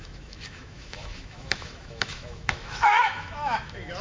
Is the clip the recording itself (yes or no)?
no